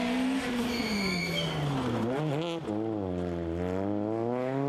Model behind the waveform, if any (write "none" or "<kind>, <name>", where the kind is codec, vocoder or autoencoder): none